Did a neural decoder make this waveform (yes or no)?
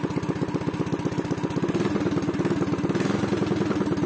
no